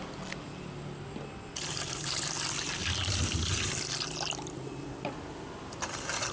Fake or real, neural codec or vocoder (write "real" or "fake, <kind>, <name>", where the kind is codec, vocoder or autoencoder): real